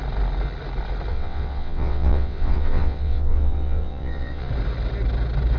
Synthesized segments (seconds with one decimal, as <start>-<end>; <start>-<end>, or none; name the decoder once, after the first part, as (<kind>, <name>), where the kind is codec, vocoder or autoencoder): 1.1-4.5 (vocoder, WaveNeXt)